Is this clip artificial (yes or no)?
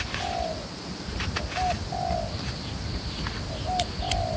no